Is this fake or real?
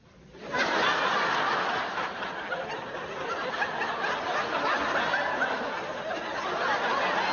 real